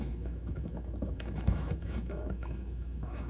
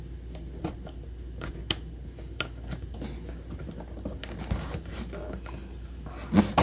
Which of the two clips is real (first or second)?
second